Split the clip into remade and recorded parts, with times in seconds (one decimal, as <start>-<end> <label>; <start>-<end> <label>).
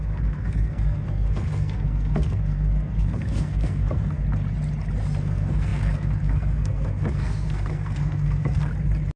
0.0-4.2 remade; 4.2-5.2 recorded; 5.2-8.7 remade; 8.7-9.2 recorded